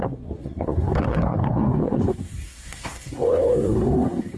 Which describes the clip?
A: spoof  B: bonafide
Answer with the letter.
A